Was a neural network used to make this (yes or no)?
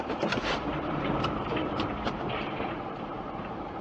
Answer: yes